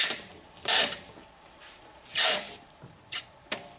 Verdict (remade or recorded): remade